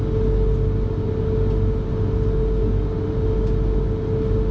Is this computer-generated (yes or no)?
no